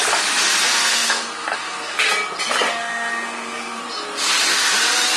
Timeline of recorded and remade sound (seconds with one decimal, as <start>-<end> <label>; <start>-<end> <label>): 0.0-0.7 recorded; 0.7-2.1 remade; 2.1-2.8 recorded; 2.8-3.8 remade; 3.8-5.2 recorded